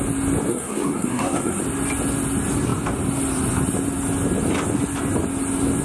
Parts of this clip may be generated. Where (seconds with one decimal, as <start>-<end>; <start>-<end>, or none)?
0.5-1.6

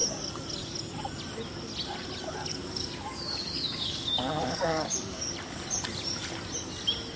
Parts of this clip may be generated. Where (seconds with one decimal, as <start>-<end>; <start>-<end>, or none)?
2.5-5.3